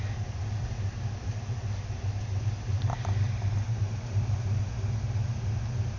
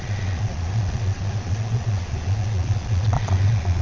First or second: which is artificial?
second